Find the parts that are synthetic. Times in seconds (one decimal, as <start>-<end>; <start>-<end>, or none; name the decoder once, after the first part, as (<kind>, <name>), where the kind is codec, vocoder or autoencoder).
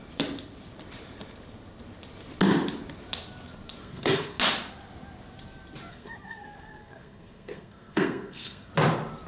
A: 3.8-4.4 (codec, SNAC); 5.9-8.7